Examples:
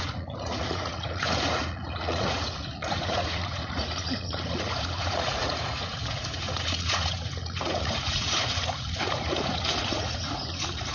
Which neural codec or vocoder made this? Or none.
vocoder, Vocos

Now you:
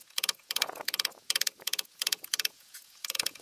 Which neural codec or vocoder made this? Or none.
vocoder, Vocos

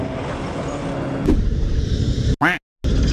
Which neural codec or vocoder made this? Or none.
none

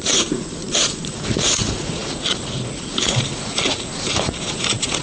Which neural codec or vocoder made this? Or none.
vocoder, Vocos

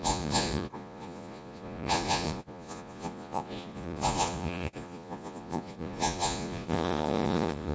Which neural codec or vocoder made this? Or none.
vocoder, Vocos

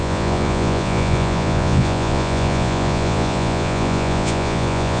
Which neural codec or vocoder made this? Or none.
vocoder, Vocos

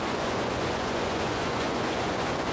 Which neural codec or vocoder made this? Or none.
vocoder, Vocos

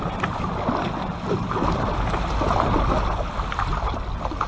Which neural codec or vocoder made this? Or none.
none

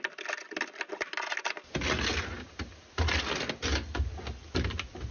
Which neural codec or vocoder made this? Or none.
none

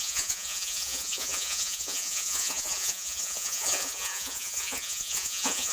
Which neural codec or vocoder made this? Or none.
vocoder, Vocos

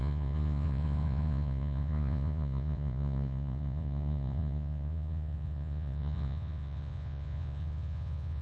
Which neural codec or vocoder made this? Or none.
vocoder, Vocos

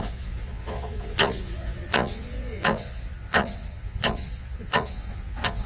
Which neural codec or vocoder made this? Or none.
vocoder, Vocos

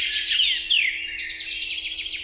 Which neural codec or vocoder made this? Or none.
none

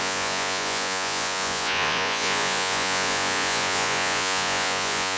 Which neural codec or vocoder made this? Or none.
vocoder, Vocos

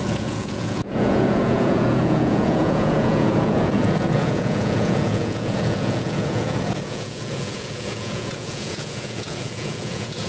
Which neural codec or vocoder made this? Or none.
vocoder, Vocos